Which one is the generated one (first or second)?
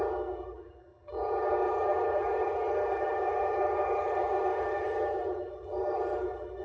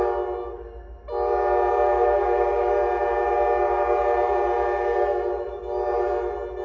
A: first